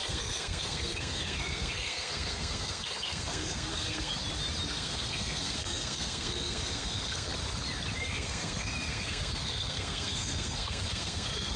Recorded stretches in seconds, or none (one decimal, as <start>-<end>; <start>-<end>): 4.2-4.7; 7.3-8.0